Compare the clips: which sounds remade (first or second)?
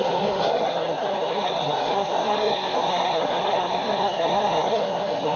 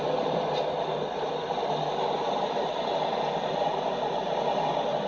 first